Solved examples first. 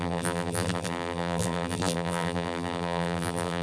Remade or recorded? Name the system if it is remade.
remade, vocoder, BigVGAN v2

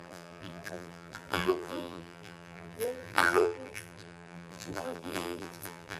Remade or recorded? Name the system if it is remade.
remade, vocoder, BigVGAN v2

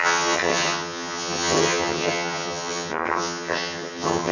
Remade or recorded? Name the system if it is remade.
remade, vocoder, HiFi-GAN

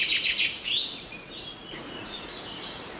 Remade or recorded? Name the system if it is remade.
remade, vocoder, Vocos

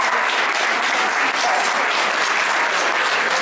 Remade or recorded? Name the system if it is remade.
recorded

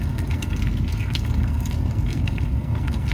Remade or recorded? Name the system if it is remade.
remade, codec, SNAC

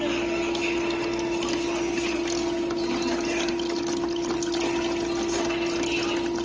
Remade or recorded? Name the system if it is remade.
recorded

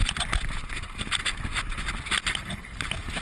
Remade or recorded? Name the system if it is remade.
recorded